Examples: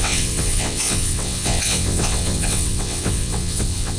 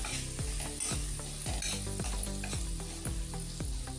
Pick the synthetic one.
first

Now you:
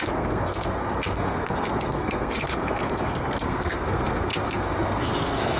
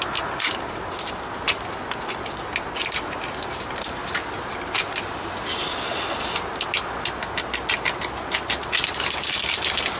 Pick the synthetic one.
first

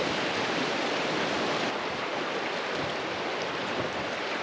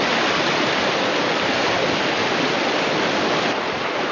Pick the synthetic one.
first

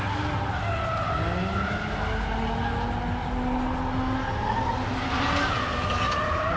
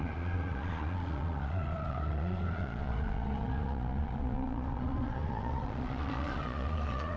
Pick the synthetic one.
second